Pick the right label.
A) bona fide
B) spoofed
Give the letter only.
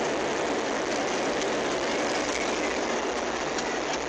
A